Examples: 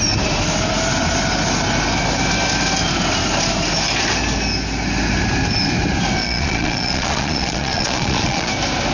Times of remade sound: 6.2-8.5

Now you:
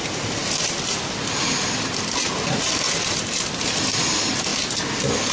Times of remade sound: none

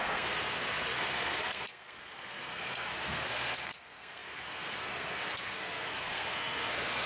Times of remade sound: 0.0-7.1